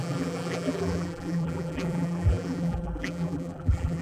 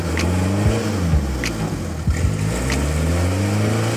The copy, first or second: first